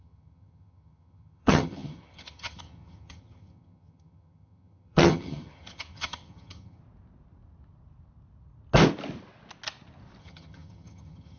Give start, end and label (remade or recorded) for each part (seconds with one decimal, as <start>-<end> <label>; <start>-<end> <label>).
0.0-6.8 remade; 6.8-10.2 recorded; 10.2-11.4 remade